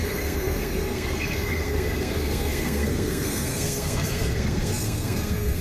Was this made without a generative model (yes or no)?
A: no